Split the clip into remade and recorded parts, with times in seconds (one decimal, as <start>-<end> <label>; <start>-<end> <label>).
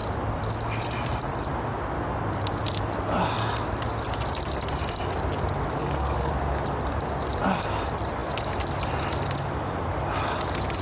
0.0-5.8 recorded; 5.8-6.3 remade; 6.3-10.8 recorded